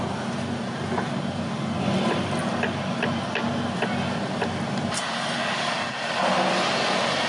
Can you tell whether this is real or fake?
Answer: real